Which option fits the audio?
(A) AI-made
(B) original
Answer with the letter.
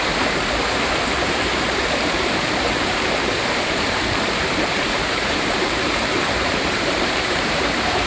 A